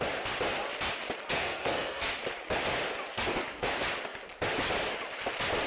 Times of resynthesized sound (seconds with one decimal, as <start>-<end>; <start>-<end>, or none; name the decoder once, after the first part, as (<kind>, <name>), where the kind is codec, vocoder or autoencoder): 1.3-2.1 (codec, SNAC)